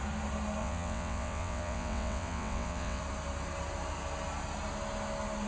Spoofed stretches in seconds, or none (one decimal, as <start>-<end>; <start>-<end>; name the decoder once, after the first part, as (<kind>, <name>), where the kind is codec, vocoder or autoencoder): 0.6-3.0 (vocoder, WaveNeXt)